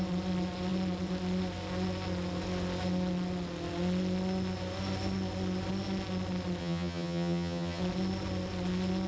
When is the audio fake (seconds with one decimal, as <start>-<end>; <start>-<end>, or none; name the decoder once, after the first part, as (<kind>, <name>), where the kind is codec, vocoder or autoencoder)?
6.6-7.8 (vocoder, HiFi-GAN)